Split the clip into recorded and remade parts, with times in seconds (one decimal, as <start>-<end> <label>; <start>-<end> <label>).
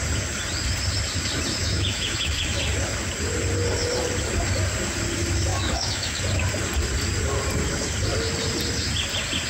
0.0-1.6 recorded; 1.6-2.6 remade; 2.6-5.5 recorded; 5.5-6.2 remade; 6.2-9.5 recorded